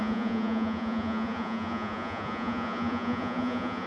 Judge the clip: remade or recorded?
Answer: remade